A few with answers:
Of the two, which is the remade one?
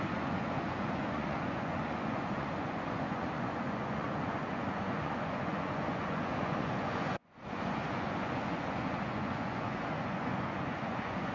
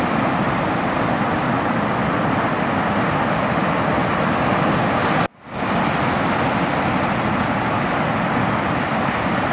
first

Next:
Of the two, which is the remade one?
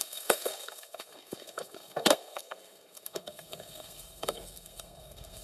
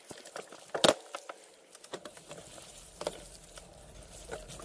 first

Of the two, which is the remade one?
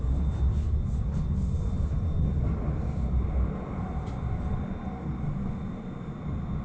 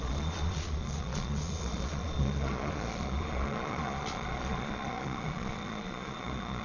second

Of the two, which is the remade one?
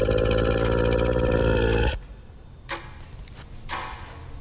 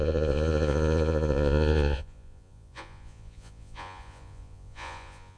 second